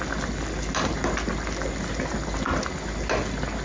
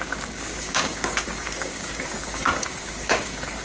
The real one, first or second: first